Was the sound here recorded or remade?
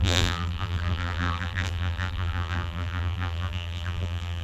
remade